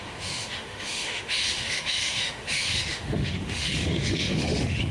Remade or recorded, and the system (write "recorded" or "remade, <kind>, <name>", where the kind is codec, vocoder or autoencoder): remade, autoencoder, DAC-VAE